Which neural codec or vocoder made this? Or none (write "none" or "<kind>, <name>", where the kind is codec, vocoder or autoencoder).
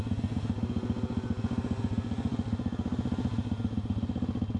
none